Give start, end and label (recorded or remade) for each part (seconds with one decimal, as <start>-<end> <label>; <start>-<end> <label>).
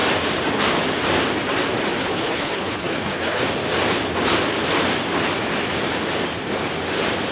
0.0-2.0 recorded; 2.0-3.4 remade; 3.4-7.3 recorded